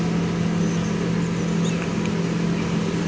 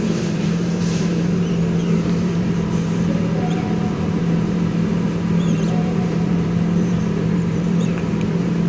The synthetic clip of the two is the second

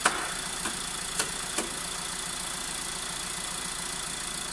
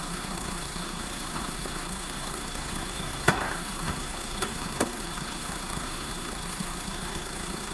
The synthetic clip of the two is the second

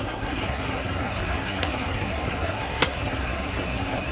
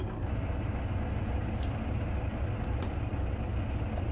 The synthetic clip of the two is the first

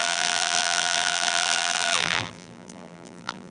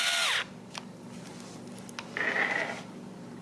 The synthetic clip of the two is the first